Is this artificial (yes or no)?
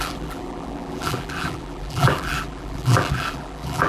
yes